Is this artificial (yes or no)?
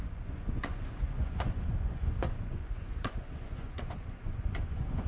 yes